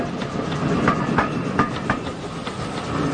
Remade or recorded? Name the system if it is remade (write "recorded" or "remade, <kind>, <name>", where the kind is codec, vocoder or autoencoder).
recorded